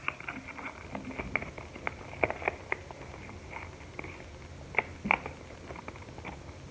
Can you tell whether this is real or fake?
real